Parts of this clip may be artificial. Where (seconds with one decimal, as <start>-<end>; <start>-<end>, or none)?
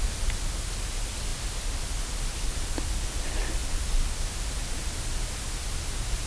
none